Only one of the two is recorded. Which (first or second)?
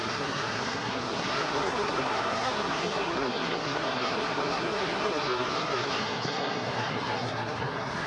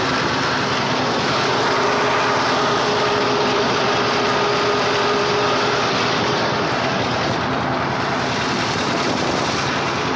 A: second